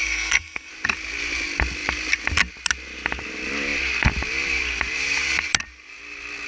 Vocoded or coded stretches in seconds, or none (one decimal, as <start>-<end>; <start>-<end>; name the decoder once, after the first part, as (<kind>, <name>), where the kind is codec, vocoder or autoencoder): 0.0-0.7 (codec, SNAC)